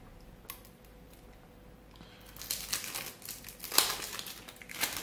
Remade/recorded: recorded